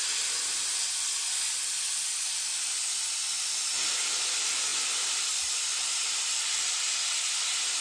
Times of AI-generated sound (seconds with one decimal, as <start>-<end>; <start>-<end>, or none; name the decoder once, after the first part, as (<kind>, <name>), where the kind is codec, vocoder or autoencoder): none